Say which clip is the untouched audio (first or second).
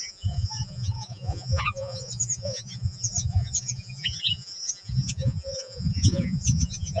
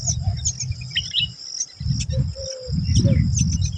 second